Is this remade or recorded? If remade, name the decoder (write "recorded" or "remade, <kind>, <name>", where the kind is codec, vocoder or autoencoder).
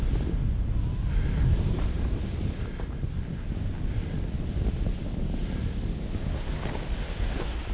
recorded